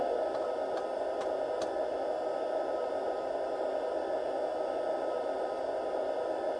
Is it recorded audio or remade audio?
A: recorded